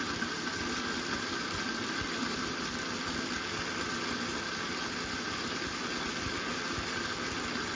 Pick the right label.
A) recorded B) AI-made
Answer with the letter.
A